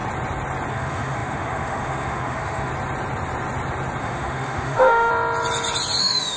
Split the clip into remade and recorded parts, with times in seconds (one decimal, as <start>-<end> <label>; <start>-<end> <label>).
0.0-0.7 recorded; 0.7-2.7 remade; 2.7-4.0 recorded; 4.0-5.1 remade; 5.1-6.0 recorded; 6.0-6.4 remade